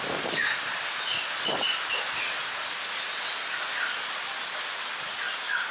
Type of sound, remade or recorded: recorded